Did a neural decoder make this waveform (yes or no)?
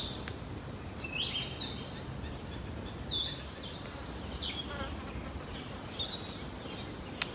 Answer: no